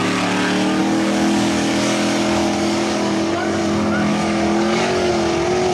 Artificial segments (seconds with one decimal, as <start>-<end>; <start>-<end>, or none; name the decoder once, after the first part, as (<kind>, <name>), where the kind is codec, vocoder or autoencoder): 0.8-3.6 (codec, DAC); 4.1-5.1